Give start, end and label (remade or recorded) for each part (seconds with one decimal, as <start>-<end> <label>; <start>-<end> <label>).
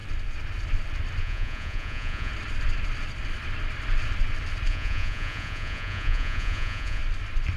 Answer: 0.0-1.2 recorded; 1.2-2.3 remade; 2.3-4.7 recorded; 4.7-7.0 remade; 7.0-7.6 recorded